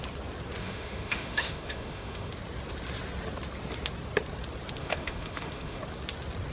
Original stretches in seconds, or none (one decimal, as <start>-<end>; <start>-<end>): 0.0-0.6; 2.3-4.8; 5.8-6.5